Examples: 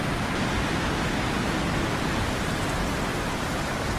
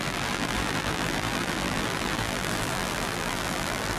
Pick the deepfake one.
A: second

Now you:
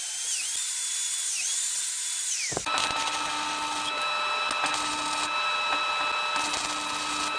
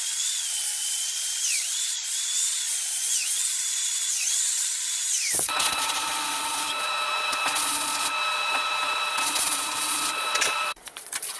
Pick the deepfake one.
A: second